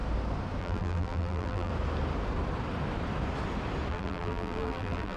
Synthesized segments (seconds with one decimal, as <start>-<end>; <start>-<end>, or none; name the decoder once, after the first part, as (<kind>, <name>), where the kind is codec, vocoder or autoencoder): 0.6-1.7 (vocoder, BigVGAN v2); 3.9-5.2